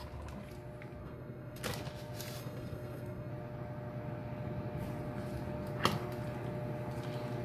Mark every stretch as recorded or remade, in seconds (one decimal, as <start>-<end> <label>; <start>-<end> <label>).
0.0-1.0 recorded; 1.0-1.6 remade; 1.6-2.4 recorded; 2.4-3.3 remade; 3.3-7.4 recorded